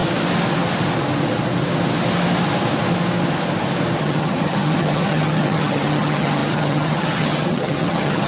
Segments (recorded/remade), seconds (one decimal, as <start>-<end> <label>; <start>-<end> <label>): 0.0-4.0 recorded; 4.0-8.3 remade